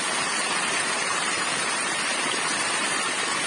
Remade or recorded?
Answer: remade